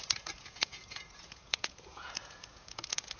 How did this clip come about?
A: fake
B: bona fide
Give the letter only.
A